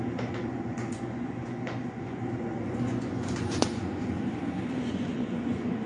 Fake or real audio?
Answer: fake